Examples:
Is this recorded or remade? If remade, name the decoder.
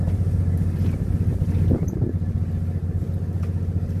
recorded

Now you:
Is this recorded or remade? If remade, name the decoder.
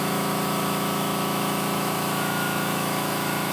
remade, autoencoder, DAC-VAE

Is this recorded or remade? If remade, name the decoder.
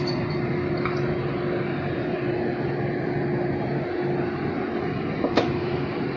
recorded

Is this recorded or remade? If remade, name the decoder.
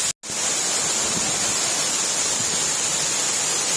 recorded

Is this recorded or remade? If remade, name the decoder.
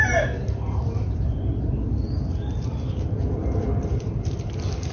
recorded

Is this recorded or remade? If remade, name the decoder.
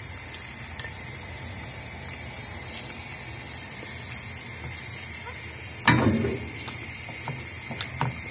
recorded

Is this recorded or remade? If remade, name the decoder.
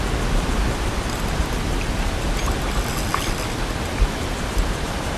recorded